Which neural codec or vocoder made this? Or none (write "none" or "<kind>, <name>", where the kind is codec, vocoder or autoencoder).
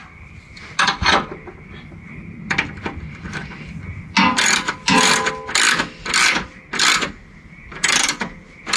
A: none